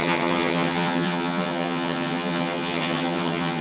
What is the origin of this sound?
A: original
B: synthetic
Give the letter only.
B